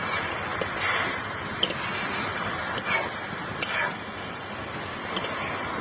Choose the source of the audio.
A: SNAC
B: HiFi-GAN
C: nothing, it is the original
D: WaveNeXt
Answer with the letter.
C